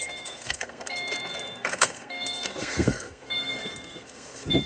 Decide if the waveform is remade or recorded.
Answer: remade